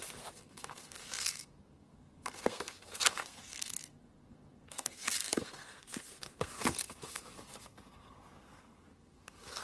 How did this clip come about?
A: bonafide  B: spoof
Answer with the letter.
B